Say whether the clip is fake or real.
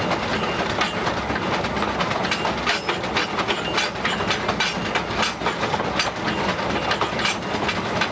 real